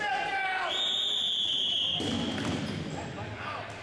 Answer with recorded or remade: recorded